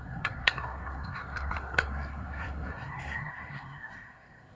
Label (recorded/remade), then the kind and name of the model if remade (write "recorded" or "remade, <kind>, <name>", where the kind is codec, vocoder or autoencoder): remade, codec, SNAC